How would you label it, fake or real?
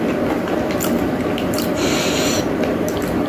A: real